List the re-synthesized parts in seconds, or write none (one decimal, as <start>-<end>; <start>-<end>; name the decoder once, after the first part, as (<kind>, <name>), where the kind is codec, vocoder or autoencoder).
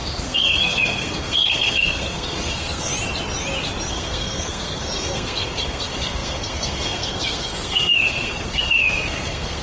0.0-2.9 (codec, SNAC); 3.9-9.6